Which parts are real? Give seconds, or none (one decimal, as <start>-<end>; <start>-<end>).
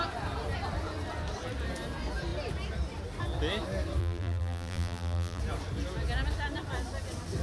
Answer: 0.0-4.0; 5.4-7.4